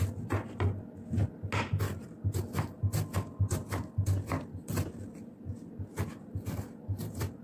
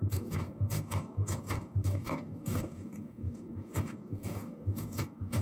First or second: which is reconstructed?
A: second